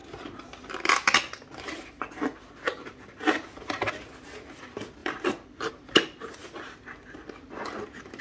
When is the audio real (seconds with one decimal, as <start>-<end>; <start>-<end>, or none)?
0.0-5.0; 5.7-8.2